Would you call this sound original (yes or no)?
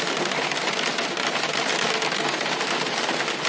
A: yes